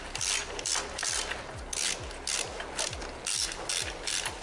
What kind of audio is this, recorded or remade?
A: recorded